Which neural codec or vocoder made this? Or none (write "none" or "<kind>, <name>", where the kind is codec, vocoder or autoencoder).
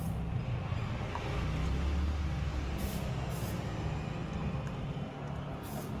none